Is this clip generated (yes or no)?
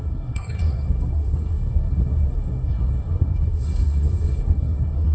yes